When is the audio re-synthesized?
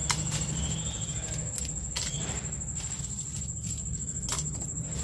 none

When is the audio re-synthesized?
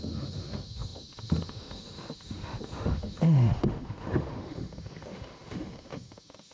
0.0-6.5